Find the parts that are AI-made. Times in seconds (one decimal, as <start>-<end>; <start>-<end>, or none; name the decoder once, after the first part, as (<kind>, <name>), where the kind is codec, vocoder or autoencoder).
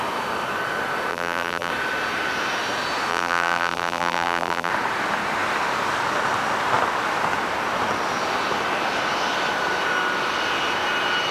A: 1.1-1.7 (vocoder, BigVGAN v2); 3.1-4.7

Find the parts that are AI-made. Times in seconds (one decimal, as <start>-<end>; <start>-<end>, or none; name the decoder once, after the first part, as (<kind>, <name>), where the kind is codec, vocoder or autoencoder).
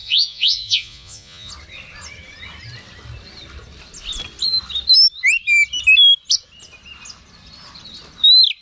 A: 0.0-1.5 (vocoder, Vocos)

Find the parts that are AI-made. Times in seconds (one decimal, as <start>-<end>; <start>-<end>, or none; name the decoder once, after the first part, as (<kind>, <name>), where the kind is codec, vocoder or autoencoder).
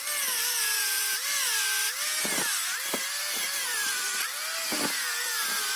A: 1.0-4.0 (vocoder, BigVGAN v2)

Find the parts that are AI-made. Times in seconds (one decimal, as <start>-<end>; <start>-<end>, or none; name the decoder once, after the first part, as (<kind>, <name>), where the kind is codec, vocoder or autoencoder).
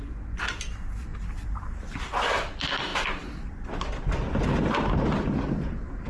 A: 1.1-1.8 (vocoder, BigVGAN v2)